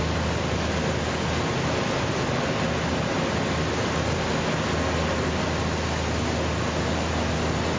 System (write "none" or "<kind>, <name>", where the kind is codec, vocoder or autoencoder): none